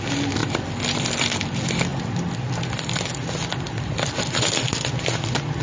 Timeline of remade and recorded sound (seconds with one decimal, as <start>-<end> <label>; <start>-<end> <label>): 0.0-5.6 recorded